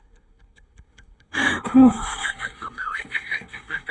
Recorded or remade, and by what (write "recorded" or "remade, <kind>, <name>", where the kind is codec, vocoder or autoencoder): remade, codec, SNAC